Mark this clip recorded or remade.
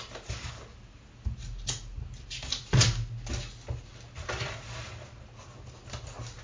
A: recorded